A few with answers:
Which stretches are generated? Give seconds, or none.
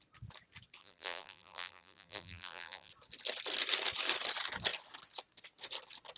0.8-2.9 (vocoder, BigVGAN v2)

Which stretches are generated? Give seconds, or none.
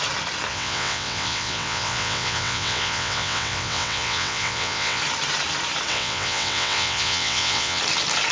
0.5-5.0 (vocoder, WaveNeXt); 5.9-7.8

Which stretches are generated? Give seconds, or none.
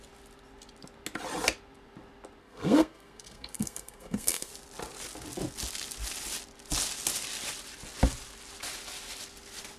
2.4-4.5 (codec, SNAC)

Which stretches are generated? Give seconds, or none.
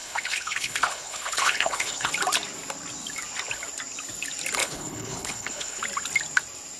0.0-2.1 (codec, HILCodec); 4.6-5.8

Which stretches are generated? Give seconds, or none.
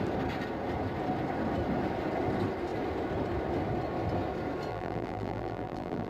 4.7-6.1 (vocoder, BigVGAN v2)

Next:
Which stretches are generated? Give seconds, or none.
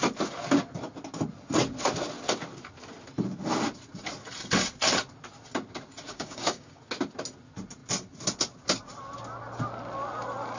6.1-6.8 (codec, DAC)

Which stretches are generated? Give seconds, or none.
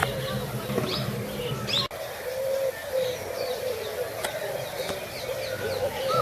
0.0-1.2 (vocoder, BigVGAN v2); 2.8-3.7